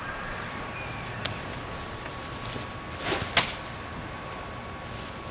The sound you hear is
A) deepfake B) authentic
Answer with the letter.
B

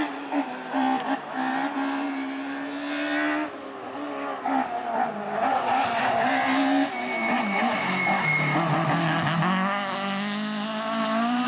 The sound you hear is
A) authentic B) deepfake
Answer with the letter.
A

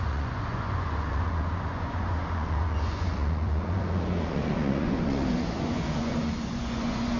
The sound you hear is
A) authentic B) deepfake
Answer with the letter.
B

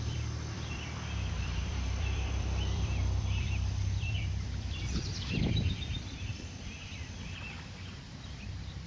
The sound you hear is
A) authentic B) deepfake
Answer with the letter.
B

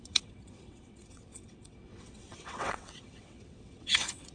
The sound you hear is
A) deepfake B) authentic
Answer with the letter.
A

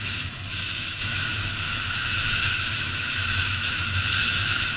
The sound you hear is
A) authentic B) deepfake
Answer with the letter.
B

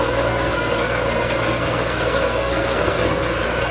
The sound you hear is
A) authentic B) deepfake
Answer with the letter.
B